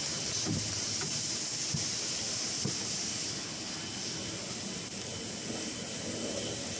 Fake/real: real